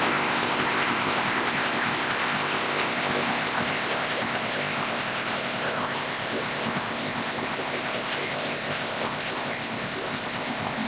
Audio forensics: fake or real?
fake